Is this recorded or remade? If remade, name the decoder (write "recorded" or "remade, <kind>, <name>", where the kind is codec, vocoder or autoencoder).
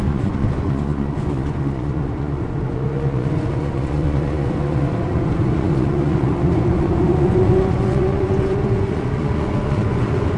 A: remade, vocoder, Vocos